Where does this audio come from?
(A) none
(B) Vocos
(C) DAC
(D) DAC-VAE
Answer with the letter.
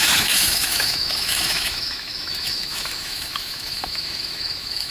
D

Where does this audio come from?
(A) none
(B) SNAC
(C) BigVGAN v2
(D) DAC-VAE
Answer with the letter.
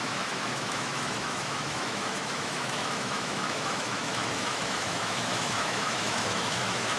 D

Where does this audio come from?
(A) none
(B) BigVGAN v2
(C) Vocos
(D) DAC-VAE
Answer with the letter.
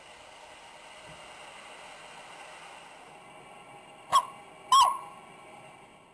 A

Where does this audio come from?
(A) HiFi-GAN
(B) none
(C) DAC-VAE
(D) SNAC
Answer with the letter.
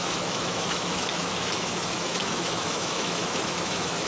C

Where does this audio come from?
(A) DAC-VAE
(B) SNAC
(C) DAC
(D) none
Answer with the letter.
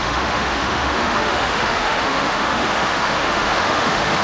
A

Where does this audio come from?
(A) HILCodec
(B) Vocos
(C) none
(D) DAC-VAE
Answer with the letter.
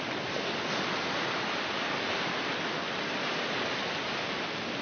C